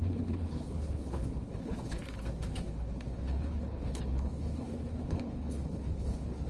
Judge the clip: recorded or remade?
remade